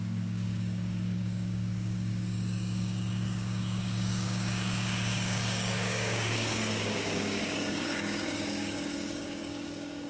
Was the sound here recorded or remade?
remade